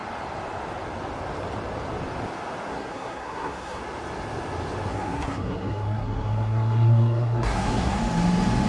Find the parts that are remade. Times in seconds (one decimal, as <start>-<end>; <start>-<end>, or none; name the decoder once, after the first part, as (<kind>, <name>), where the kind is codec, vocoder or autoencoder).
2.7-3.8 (codec, SNAC); 4.9-8.0